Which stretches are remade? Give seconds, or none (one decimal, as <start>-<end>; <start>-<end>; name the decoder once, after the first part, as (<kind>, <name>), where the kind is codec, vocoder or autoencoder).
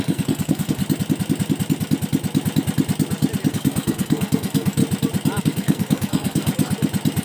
0.0-0.8 (codec, SNAC); 3.5-4.8; 5.4-6.5